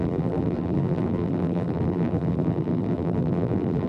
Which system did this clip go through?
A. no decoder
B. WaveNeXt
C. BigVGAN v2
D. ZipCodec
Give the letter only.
C